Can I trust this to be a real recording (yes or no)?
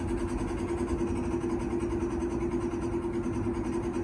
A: yes